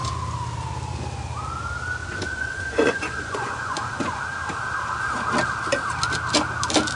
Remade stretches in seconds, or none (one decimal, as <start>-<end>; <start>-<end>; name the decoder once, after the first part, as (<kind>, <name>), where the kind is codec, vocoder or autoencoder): 2.0-4.2 (vocoder, Vocos)